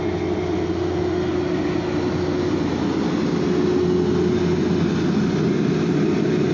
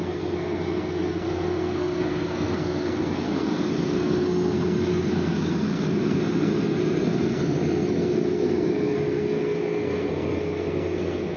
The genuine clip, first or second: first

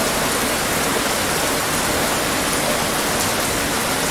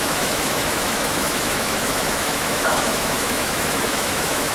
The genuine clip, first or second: first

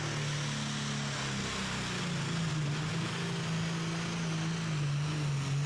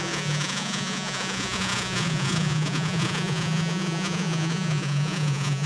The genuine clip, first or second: first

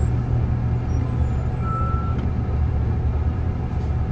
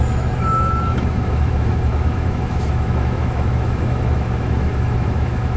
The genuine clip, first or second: first